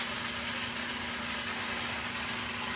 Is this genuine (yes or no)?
yes